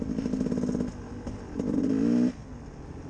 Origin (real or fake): real